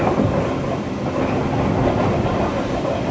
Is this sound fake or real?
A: real